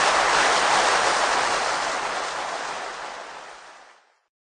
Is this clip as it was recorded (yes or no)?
yes